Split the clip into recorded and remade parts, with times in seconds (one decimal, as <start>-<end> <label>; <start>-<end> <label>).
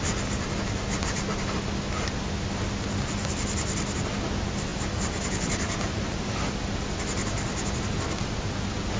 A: 0.0-4.7 recorded; 4.7-6.4 remade; 6.4-9.0 recorded